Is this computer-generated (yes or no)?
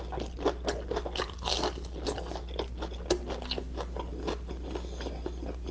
no